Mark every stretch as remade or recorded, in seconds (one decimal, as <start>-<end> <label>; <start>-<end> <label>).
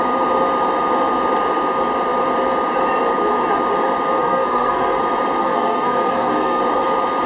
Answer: 0.0-4.2 recorded; 4.2-5.0 remade; 5.0-5.4 recorded; 5.4-6.6 remade; 6.6-7.3 recorded